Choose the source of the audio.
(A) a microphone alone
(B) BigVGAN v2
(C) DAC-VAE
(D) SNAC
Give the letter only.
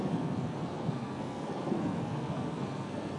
D